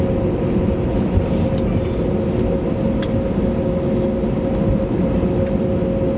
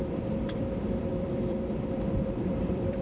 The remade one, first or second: second